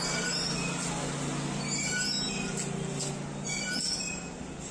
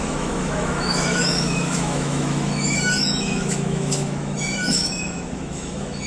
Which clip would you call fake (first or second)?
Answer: second